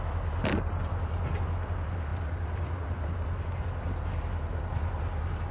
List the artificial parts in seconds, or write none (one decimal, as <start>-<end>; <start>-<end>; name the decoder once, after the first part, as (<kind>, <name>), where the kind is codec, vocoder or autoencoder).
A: none

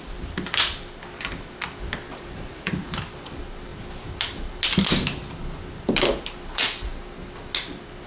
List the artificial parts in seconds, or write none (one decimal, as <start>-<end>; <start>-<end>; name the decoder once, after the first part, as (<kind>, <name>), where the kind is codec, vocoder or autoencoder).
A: 2.1-2.7 (vocoder, Vocos)

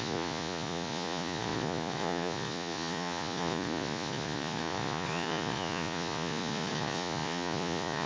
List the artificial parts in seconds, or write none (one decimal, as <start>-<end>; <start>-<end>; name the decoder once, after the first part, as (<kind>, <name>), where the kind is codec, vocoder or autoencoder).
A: 0.0-8.1 (vocoder, Vocos)

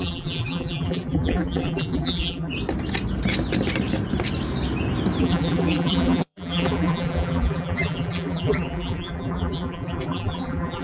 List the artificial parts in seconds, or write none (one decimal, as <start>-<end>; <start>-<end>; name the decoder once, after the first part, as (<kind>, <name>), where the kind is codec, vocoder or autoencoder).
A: 0.0-2.5 (vocoder, BigVGAN v2); 5.2-10.8

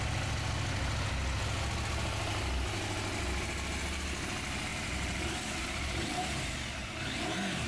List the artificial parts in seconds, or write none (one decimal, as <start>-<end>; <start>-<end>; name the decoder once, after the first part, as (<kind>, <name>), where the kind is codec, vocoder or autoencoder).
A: 4.7-6.3 (vocoder, BigVGAN v2); 6.8-7.7

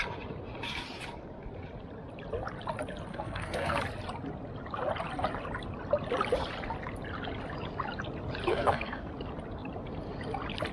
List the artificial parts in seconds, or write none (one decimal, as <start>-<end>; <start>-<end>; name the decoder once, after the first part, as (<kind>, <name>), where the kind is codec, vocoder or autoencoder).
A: 3.1-3.8 (codec, SNAC); 8.5-9.1

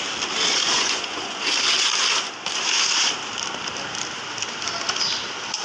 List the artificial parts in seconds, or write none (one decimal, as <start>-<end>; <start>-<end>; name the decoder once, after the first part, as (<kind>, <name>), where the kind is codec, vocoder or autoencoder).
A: 0.5-1.5 (vocoder, Vocos)